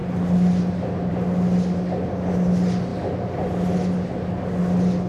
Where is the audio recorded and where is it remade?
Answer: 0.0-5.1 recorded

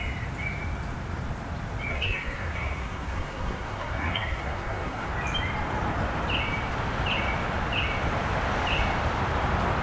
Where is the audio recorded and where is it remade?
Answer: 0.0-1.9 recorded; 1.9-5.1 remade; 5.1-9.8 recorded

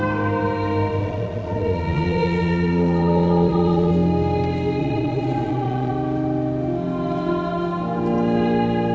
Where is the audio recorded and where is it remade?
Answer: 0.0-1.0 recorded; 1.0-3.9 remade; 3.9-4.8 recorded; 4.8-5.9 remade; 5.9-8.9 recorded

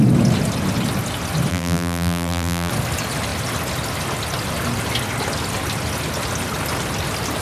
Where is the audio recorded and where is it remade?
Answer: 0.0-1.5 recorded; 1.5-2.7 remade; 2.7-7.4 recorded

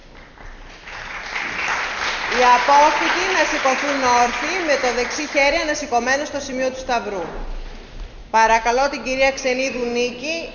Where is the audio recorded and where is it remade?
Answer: 0.0-8.2 recorded; 8.2-8.9 remade; 8.9-10.5 recorded

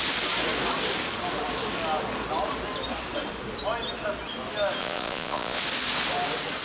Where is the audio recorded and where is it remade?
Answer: 0.0-4.8 recorded; 4.8-5.6 remade; 5.6-6.6 recorded

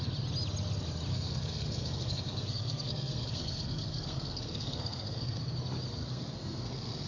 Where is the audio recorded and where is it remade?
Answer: 0.0-1.1 recorded; 1.1-5.4 remade; 5.4-6.0 recorded; 6.0-7.1 remade

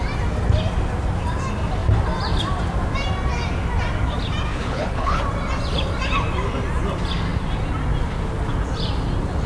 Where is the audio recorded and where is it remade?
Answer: 0.0-4.5 recorded; 4.5-5.2 remade; 5.2-9.5 recorded